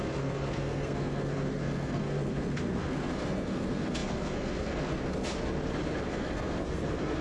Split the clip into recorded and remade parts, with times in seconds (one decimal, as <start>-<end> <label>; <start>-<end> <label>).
0.0-5.3 remade; 5.3-6.0 recorded; 6.0-7.2 remade